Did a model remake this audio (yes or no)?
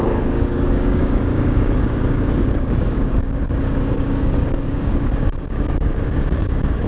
yes